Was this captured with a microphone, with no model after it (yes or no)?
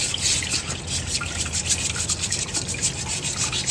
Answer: yes